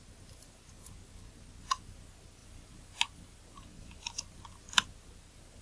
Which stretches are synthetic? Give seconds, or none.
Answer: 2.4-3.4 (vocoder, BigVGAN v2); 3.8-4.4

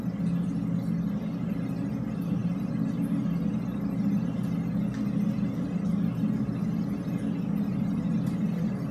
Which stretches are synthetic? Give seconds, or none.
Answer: none

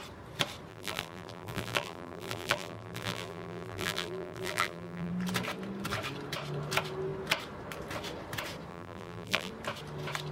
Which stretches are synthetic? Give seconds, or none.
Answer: 0.7-5.1 (vocoder, BigVGAN v2); 8.7-9.5

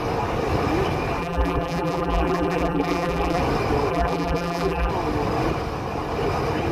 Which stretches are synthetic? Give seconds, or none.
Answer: 1.2-3.4 (vocoder, BigVGAN v2); 3.9-4.9